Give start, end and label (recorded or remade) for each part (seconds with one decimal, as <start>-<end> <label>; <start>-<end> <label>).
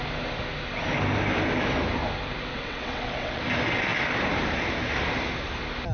0.0-2.5 recorded; 2.5-3.4 remade; 3.4-5.9 recorded